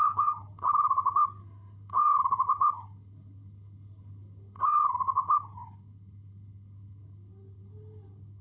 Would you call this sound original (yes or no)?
no